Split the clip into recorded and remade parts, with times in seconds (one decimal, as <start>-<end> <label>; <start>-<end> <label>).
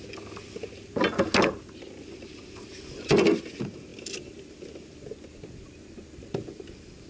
0.0-7.1 recorded